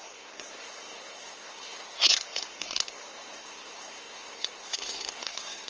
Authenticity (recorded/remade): remade